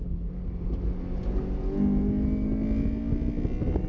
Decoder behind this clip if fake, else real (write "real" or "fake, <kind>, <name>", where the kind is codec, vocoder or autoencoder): real